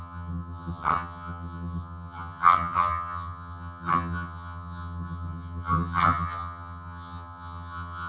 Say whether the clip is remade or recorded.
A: remade